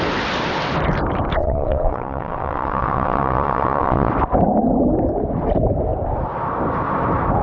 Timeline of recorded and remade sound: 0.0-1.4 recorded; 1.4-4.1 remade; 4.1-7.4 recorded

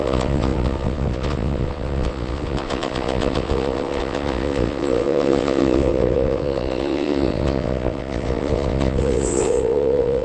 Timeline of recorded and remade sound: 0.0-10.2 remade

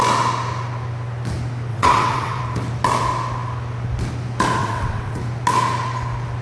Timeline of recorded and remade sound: 0.0-1.7 recorded; 1.7-2.4 remade; 2.4-4.6 recorded; 4.6-5.2 remade; 5.2-6.4 recorded

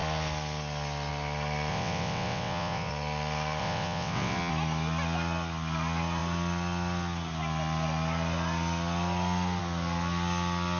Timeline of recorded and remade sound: 0.0-1.7 recorded; 1.7-2.9 remade; 2.9-3.6 recorded; 3.6-4.5 remade; 4.5-10.8 recorded